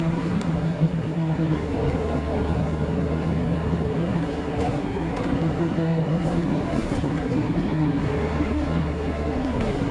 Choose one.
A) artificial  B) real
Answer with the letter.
A